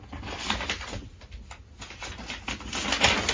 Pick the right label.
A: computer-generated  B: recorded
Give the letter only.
B